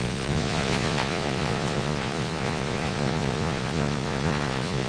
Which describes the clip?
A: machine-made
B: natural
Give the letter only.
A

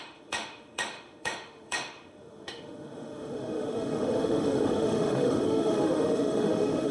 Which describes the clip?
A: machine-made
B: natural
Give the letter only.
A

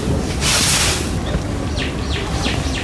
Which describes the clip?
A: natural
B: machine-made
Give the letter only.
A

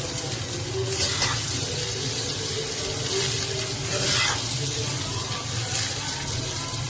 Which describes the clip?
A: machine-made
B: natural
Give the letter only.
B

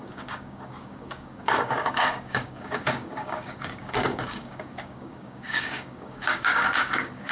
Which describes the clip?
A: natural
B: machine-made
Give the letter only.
B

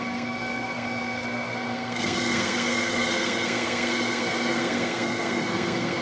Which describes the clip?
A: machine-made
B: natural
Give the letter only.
A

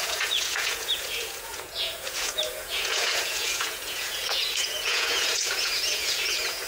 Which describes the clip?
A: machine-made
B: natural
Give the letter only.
A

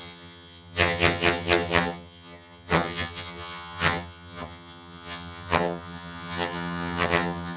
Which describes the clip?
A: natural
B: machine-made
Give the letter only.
B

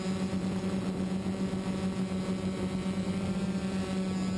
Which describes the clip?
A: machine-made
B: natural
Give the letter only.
B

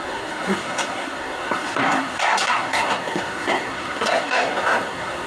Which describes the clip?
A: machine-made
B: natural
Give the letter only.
A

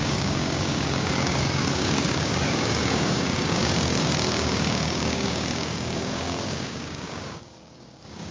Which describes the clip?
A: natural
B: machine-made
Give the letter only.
B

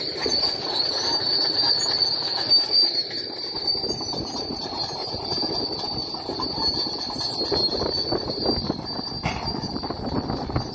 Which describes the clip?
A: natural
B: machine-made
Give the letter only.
A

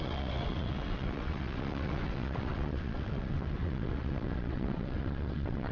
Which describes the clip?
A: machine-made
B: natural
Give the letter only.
A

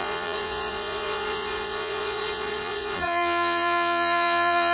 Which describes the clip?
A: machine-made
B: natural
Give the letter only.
A